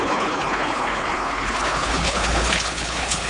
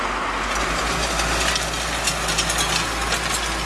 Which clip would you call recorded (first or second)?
second